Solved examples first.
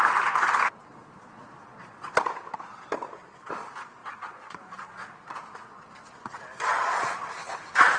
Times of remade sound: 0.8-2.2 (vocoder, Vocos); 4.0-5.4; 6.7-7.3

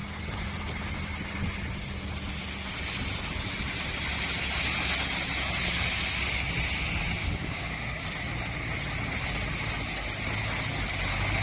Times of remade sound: 7.2-8.0 (codec, DAC)

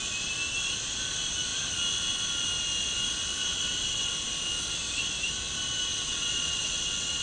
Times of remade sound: 3.4-4.1 (vocoder, WaveNeXt); 5.9-7.2

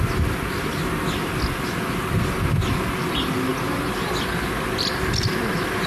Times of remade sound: none

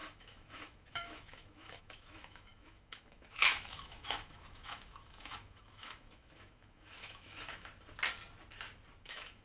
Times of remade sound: 0.0-7.7 (autoencoder, DAC-VAE); 9.0-9.4